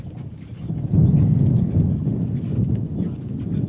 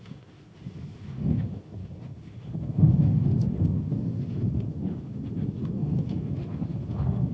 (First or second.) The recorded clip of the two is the first